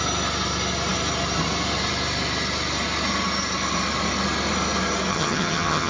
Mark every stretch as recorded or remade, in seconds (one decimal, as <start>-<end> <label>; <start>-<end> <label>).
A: 0.0-5.1 recorded; 5.1-5.9 remade